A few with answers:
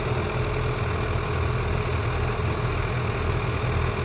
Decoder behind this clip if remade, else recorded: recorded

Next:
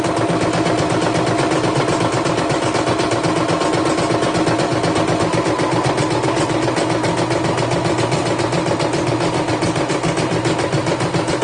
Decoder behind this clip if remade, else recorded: recorded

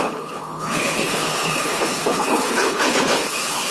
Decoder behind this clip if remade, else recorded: remade, codec, HILCodec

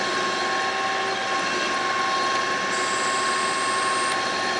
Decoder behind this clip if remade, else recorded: recorded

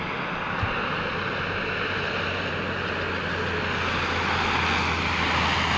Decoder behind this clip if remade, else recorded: recorded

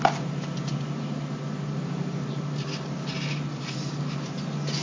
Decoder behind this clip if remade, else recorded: recorded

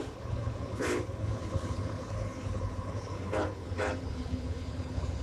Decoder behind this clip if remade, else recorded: remade, codec, HILCodec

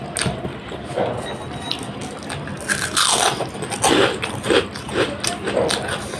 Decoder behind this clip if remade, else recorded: recorded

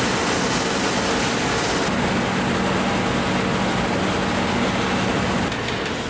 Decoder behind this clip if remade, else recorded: recorded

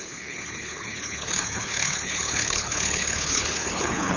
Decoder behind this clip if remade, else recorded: remade, codec, HILCodec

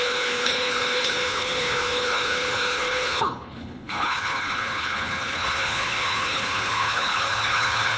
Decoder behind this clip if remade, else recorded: remade, codec, HILCodec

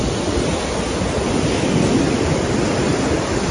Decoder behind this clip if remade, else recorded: recorded